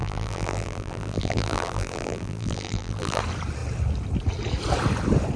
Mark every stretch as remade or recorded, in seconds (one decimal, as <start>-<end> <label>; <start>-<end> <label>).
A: 0.0-3.2 remade; 3.2-5.4 recorded